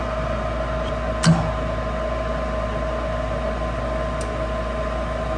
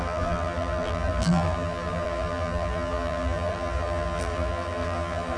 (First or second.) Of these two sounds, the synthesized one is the second